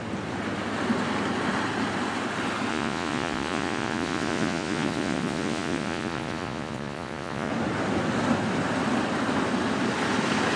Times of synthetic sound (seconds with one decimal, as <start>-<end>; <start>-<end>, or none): 2.7-7.5

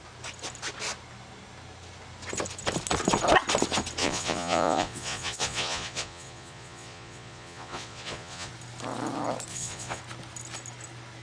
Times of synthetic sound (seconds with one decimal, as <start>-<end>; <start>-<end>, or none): 4.0-8.5; 9.5-10.0

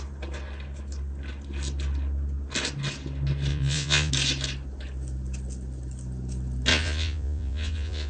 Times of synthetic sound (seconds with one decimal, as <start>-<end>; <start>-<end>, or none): 3.5-4.1; 6.7-8.1

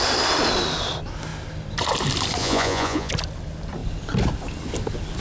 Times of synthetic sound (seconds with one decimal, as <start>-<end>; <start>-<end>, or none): 2.4-3.1